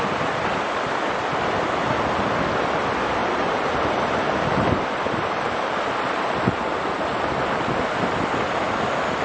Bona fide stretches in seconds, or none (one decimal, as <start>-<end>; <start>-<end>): 0.0-3.2; 6.9-9.2